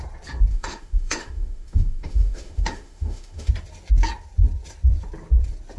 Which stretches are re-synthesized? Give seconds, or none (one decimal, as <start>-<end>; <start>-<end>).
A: 0.5-3.5